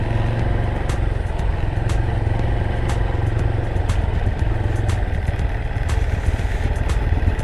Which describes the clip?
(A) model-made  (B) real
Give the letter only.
B